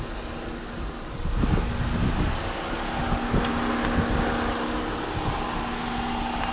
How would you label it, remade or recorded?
recorded